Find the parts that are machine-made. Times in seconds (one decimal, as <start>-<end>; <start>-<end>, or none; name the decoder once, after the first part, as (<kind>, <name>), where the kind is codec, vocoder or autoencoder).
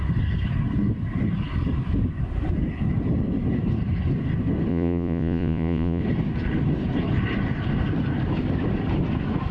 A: 4.7-6.0 (vocoder, Vocos)